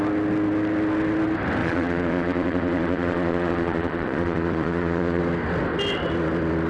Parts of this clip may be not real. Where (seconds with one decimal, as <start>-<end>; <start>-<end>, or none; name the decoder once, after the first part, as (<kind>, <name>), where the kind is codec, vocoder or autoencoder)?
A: 1.6-5.2 (vocoder, Vocos)